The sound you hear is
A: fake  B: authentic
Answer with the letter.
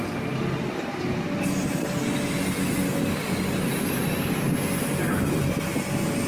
B